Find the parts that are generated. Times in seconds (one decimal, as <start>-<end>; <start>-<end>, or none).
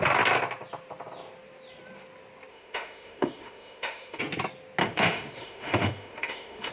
2.5-4.2; 4.8-6.7